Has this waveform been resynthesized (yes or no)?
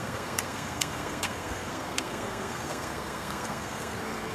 yes